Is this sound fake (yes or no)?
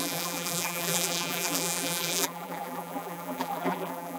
yes